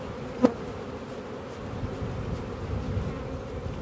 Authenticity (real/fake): real